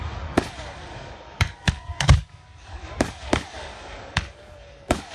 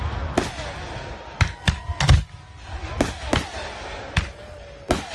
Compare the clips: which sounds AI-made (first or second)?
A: first